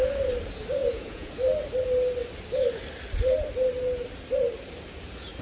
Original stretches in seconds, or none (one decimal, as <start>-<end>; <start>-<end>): 0.0-0.8; 1.3-5.4